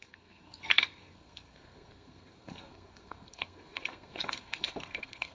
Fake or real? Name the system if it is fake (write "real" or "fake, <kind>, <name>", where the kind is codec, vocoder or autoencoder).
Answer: fake, codec, SNAC